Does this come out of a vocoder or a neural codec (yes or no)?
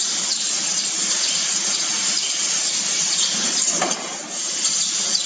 no